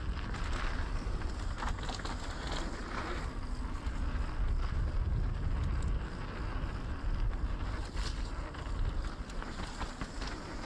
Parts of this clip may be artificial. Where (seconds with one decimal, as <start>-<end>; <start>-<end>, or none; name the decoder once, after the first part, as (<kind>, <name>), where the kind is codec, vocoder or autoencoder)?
none